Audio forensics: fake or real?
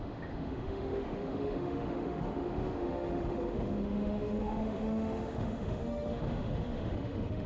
fake